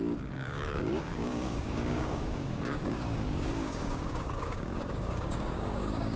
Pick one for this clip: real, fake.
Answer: fake